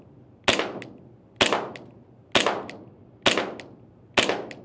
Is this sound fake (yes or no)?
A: no